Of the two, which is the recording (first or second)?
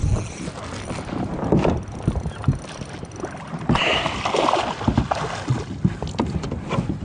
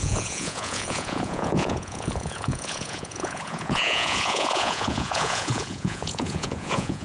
first